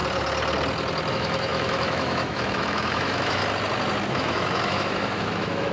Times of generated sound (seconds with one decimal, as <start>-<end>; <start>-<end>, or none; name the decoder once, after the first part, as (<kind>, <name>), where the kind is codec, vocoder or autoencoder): 1.1-3.4 (autoencoder, DAC-VAE); 4.1-5.7